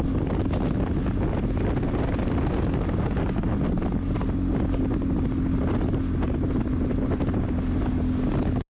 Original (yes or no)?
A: yes